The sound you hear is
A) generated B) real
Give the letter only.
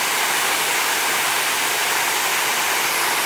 B